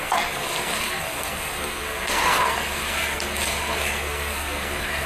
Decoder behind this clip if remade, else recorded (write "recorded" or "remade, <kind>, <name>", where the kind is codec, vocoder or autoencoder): remade, codec, SNAC